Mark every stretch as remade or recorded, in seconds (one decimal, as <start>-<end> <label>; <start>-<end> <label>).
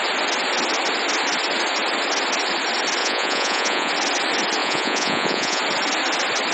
0.0-3.0 recorded; 3.0-3.9 remade; 3.9-4.6 recorded; 4.6-5.6 remade; 5.6-6.5 recorded